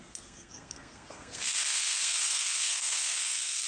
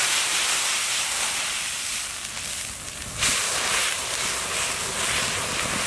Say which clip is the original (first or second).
second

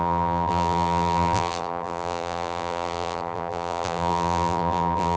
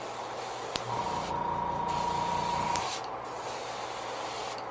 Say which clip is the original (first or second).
second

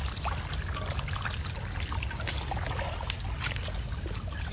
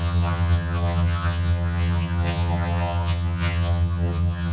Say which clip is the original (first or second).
first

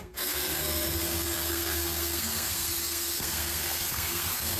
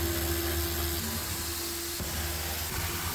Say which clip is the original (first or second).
second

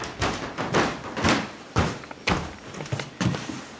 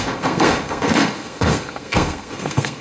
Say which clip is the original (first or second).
first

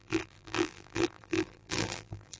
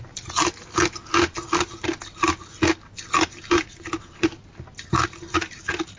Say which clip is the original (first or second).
second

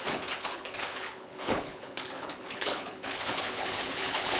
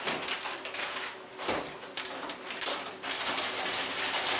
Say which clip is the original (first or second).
second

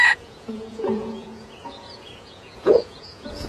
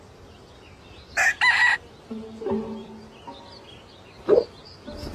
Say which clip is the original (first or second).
second